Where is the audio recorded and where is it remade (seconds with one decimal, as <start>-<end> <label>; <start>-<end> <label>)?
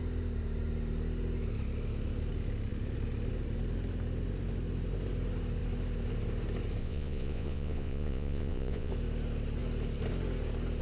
0.0-6.8 recorded; 6.8-8.9 remade; 8.9-10.8 recorded